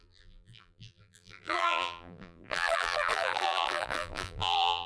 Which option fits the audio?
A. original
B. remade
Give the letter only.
B